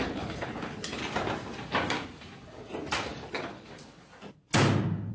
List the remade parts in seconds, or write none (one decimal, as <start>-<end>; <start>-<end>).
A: 0.0-1.0; 3.3-3.7